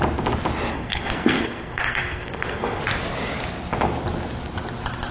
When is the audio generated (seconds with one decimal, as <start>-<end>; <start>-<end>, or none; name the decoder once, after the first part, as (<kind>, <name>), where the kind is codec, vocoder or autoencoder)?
0.7-2.8 (codec, SNAC)